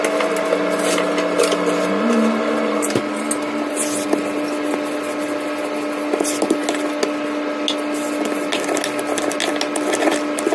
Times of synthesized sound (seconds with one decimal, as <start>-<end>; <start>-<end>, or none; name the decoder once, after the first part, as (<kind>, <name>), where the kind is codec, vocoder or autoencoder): none